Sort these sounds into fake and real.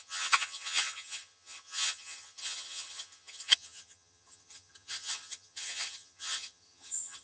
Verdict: fake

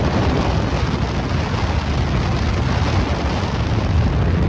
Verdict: real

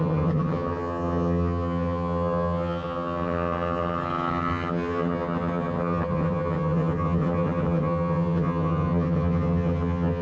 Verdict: fake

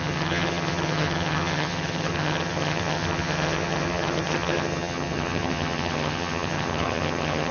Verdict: fake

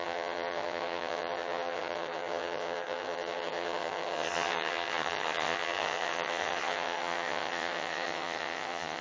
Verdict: fake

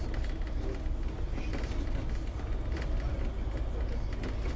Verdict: real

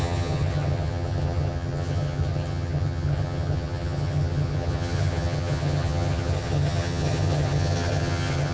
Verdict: fake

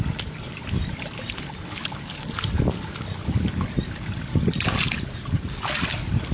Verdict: real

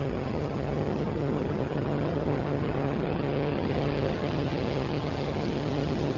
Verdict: fake